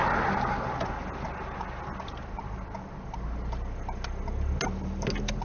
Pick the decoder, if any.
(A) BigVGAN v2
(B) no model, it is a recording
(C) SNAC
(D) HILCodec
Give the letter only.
B